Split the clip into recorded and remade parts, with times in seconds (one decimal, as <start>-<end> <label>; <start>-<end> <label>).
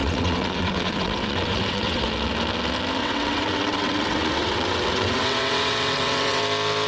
0.0-2.1 remade; 2.1-3.0 recorded; 3.0-6.4 remade; 6.4-6.9 recorded